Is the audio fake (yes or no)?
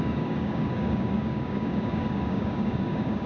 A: yes